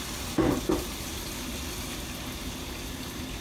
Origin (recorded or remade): recorded